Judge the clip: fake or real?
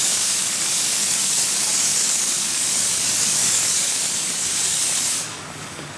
fake